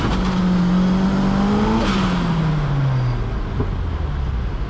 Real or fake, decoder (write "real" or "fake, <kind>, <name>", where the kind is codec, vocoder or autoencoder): real